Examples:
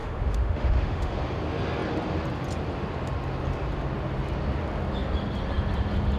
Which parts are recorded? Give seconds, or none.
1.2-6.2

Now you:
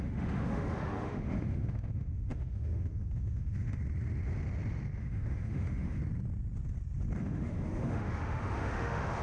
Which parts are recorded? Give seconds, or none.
3.8-5.0; 6.0-7.2

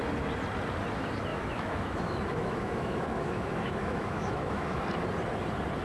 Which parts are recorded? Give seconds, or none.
0.0-1.3; 4.8-5.8

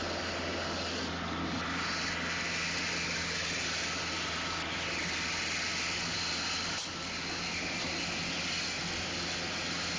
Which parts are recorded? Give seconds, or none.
0.0-10.0

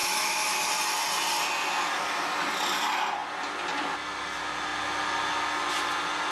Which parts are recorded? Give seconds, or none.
0.7-6.3

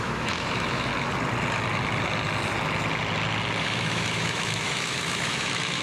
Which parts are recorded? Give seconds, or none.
0.9-3.6

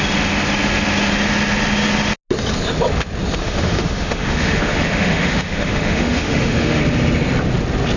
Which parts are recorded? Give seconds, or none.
0.0-3.4; 6.8-8.0